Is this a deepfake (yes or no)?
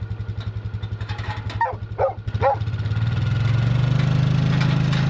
no